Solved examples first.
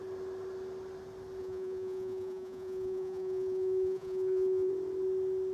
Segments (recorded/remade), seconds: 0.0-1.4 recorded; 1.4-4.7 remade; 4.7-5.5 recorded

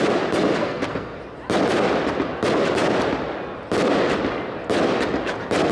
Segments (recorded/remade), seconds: 0.0-0.6 recorded; 0.6-1.2 remade; 1.2-5.7 recorded

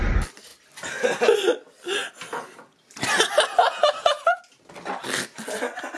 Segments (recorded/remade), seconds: 0.0-3.6 recorded; 3.6-4.4 remade; 4.4-6.0 recorded

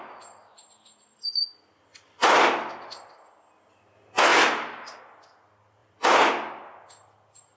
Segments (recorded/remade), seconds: 0.0-0.4 recorded; 0.4-3.3 remade; 3.3-4.3 recorded; 4.3-5.0 remade; 5.0-5.8 recorded; 5.8-6.6 remade; 6.6-7.6 recorded

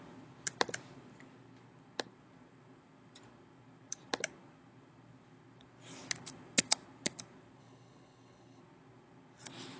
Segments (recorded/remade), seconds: 0.0-7.6 recorded; 7.6-8.6 remade; 8.6-9.8 recorded

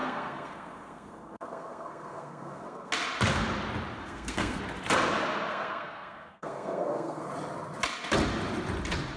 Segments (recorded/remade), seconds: 0.0-2.9 remade; 2.9-4.0 recorded; 4.0-4.6 remade; 4.6-5.5 recorded; 5.5-7.3 remade; 7.3-9.2 recorded